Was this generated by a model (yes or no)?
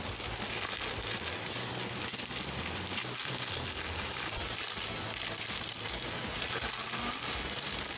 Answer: no